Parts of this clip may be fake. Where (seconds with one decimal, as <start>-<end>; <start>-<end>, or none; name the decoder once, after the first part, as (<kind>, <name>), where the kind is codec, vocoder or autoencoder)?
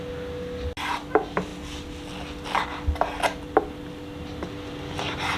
none